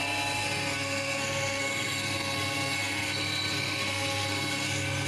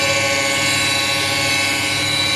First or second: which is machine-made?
first